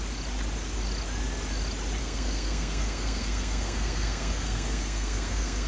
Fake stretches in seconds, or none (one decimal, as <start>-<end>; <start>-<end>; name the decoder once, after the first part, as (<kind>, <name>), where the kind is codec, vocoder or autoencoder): 2.0-5.7 (codec, SNAC)